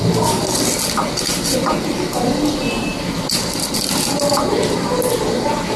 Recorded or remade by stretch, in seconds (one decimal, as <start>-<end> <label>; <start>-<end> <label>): 0.0-5.8 recorded